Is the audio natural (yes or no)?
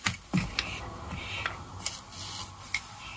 yes